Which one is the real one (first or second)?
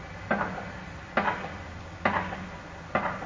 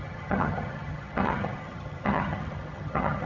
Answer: first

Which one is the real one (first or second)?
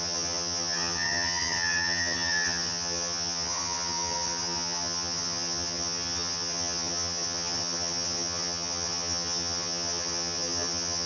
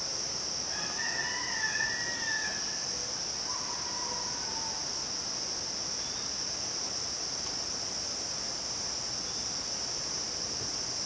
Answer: second